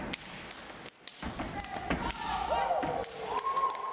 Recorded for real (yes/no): yes